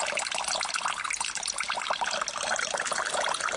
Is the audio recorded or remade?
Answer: recorded